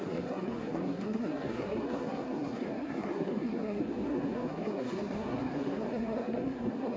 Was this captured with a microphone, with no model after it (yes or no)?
no